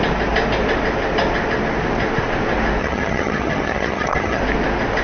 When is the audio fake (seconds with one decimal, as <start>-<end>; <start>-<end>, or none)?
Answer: 2.8-4.4